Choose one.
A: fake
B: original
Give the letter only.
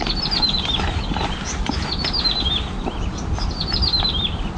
B